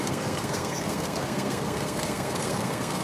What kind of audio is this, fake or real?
fake